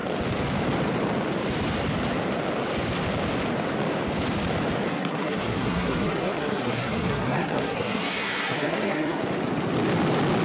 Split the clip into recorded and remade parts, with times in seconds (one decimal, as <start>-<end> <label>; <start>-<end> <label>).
0.0-4.9 recorded; 4.9-9.2 remade; 9.2-10.4 recorded